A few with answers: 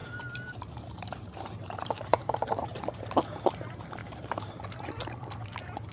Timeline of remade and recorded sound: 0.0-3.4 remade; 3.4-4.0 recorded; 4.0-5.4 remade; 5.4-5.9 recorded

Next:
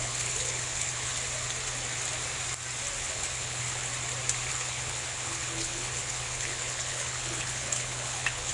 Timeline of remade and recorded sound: 0.0-1.1 remade; 1.1-3.0 recorded; 3.0-3.9 remade; 3.9-4.5 recorded; 4.5-8.5 remade

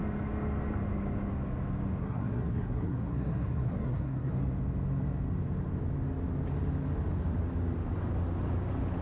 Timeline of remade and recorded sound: 0.0-2.0 recorded; 2.0-4.3 remade; 4.3-9.0 recorded

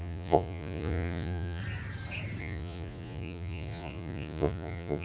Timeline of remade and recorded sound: 0.0-1.6 remade; 1.6-2.4 recorded; 2.4-5.0 remade

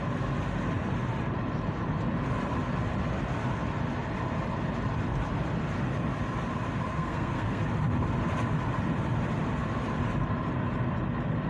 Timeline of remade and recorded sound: 0.0-6.9 recorded; 6.9-7.6 remade; 7.6-11.5 recorded

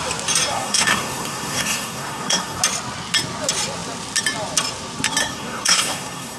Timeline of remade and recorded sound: 0.0-0.5 recorded; 0.5-2.6 remade; 2.6-5.2 recorded; 5.2-6.4 remade

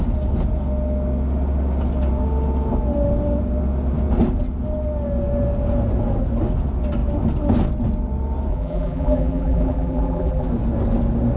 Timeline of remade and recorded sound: 0.0-8.5 recorded; 8.5-10.5 remade; 10.5-11.4 recorded

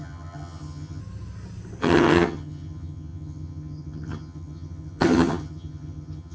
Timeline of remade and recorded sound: 0.0-1.0 remade; 1.0-1.8 recorded; 1.8-6.3 remade